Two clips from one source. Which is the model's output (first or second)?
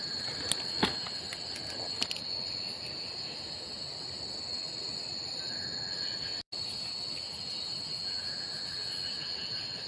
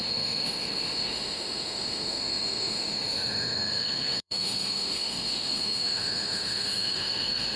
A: second